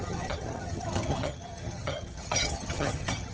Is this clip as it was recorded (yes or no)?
no